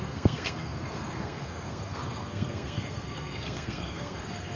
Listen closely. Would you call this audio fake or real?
fake